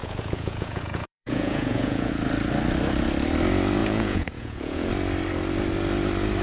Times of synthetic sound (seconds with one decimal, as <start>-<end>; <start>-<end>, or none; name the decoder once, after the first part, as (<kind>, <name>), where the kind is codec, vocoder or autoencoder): 0.0-2.1 (vocoder, Vocos); 3.8-4.9